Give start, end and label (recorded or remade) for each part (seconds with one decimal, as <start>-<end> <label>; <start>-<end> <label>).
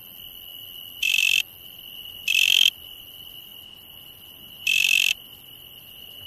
0.0-6.3 recorded